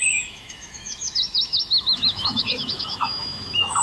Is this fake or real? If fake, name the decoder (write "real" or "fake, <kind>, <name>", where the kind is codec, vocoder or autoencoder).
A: fake, autoencoder, DAC-VAE